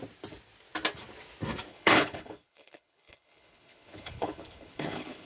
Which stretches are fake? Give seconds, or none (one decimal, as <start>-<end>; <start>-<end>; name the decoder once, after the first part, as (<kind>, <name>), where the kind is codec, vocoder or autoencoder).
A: 1.7-5.3 (codec, HILCodec)